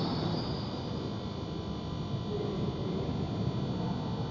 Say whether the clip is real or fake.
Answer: real